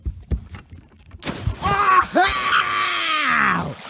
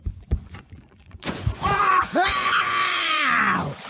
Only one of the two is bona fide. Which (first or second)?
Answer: first